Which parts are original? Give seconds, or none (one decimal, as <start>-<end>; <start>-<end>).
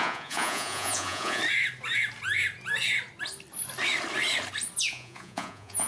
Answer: 1.4-4.9